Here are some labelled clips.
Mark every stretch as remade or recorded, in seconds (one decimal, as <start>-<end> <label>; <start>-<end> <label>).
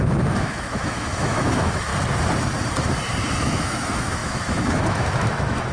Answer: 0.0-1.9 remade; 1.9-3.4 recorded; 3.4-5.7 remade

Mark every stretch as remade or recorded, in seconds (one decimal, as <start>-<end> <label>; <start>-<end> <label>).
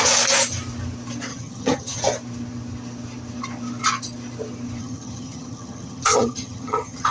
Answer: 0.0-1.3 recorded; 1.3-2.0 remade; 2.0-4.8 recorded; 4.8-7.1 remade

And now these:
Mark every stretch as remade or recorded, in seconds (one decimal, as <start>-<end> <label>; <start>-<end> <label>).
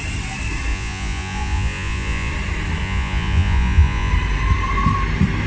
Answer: 0.0-0.7 recorded; 0.7-2.3 remade; 2.3-2.8 recorded; 2.8-4.1 remade; 4.1-5.5 recorded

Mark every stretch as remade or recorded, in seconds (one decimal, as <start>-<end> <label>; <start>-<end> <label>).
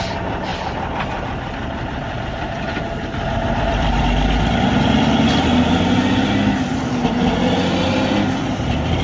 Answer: 0.0-0.5 recorded; 0.5-4.0 remade; 4.0-9.0 recorded